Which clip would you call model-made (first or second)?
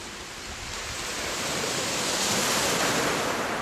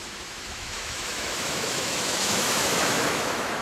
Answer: second